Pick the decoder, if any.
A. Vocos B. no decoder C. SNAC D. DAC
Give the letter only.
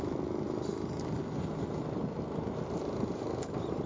B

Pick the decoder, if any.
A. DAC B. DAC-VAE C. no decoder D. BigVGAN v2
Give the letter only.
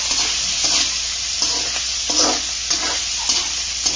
C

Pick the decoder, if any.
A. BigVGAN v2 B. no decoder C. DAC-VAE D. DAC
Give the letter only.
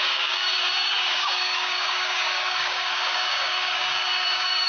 D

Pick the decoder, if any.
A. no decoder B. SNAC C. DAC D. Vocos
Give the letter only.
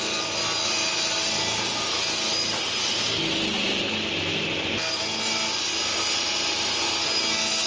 A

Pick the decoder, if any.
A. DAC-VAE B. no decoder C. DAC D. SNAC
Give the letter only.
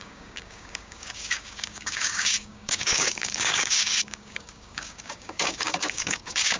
C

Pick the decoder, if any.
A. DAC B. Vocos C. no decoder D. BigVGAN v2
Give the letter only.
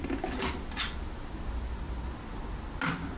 C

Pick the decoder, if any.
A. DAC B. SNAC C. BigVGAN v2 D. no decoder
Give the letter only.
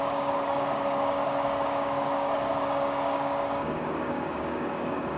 A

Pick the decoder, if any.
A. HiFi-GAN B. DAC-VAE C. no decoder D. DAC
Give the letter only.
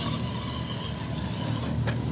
C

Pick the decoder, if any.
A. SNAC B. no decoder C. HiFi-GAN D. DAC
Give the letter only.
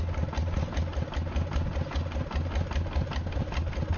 B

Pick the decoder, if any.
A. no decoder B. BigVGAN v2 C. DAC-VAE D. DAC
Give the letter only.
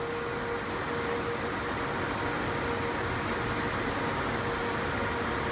A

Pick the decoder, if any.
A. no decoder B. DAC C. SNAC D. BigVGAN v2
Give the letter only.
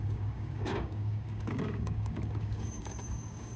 B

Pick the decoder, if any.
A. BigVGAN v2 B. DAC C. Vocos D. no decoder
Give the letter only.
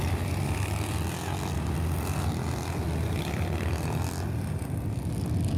D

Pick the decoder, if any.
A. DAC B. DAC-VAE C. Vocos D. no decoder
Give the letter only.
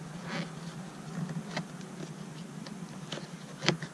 D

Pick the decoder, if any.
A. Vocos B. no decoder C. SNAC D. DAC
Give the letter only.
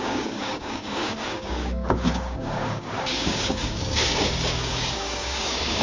D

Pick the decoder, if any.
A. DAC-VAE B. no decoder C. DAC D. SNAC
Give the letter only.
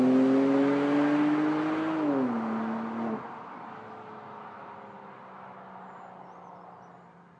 B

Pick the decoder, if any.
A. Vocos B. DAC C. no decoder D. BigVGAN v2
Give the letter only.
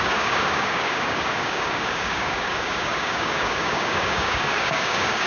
B